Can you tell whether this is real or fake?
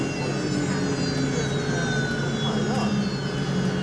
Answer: real